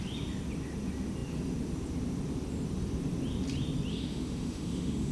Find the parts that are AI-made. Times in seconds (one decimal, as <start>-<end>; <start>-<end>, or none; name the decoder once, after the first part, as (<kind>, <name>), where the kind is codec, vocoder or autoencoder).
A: 3.9-5.1 (autoencoder, DAC-VAE)